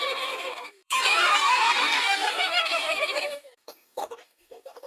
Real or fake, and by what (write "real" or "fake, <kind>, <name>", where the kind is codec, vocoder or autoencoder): fake, codec, DAC